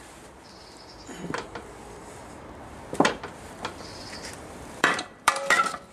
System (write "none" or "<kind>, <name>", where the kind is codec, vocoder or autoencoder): vocoder, BigVGAN v2